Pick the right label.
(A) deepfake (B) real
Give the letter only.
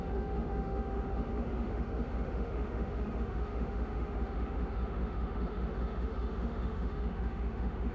A